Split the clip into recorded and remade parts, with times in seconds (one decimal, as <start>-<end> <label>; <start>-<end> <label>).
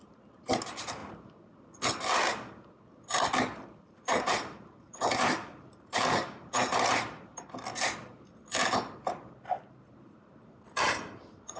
0.0-1.0 remade; 1.0-3.8 recorded; 3.8-6.7 remade; 6.7-10.0 recorded; 10.0-11.6 remade